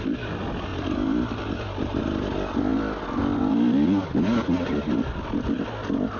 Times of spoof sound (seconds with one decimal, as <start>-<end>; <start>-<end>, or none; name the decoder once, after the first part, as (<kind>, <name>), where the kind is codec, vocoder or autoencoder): none